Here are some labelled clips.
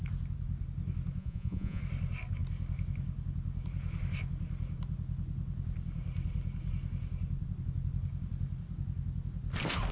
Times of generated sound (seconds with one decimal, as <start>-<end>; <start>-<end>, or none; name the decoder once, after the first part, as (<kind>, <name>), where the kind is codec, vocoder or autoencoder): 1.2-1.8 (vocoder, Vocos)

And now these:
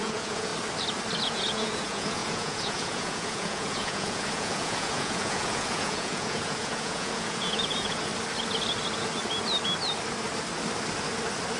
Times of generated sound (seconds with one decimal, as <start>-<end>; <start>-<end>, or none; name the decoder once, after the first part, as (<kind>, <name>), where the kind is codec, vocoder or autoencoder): 0.0-0.5 (vocoder, Vocos); 1.2-8.1

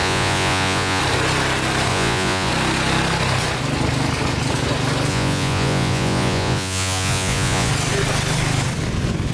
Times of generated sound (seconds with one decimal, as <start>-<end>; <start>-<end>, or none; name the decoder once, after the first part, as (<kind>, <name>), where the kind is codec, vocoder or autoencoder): 0.0-1.0 (vocoder, Vocos); 1.9-2.5; 5.1-7.7

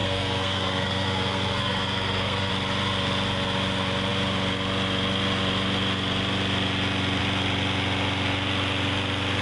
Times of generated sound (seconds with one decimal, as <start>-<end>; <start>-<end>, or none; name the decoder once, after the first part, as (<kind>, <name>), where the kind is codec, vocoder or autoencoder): 0.0-2.5 (codec, SNAC)

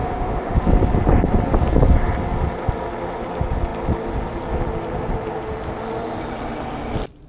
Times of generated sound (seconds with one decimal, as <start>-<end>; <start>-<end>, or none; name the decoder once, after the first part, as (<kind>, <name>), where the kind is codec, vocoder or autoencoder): 0.0-0.6 (autoencoder, DAC-VAE)

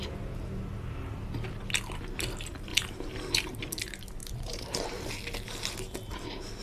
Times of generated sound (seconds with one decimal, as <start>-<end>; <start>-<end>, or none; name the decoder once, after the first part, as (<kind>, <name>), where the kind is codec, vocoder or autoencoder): 2.7-3.6 (vocoder, BigVGAN v2); 4.2-5.1